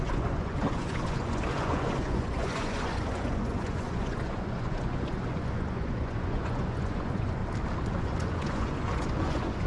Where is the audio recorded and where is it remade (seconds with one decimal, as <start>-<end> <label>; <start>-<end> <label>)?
0.0-7.4 remade; 7.4-8.0 recorded; 8.0-9.7 remade